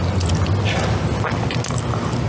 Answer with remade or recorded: recorded